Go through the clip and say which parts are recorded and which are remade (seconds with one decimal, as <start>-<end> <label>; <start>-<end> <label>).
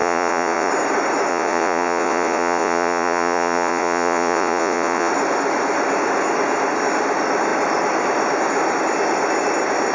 0.0-0.7 remade; 0.7-1.3 recorded; 1.3-5.1 remade; 5.1-9.9 recorded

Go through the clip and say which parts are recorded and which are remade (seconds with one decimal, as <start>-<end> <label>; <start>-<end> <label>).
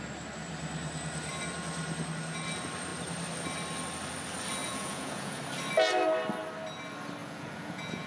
0.0-4.6 recorded; 4.6-5.4 remade; 5.4-7.2 recorded; 7.2-8.1 remade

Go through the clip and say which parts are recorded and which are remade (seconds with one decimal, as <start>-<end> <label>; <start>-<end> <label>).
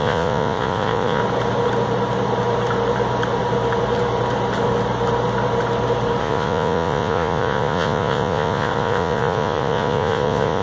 0.0-1.2 remade; 1.2-6.2 recorded; 6.2-10.6 remade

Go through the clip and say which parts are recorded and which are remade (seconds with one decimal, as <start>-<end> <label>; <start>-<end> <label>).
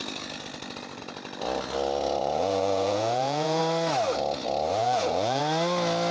0.0-2.2 recorded; 2.2-3.6 remade; 3.6-4.8 recorded; 4.8-5.4 remade; 5.4-6.1 recorded